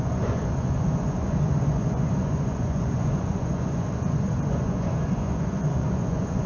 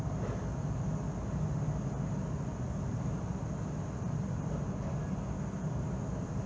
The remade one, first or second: first